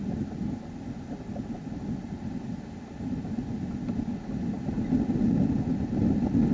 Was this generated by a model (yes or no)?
no